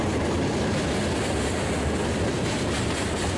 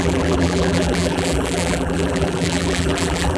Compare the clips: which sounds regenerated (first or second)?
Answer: second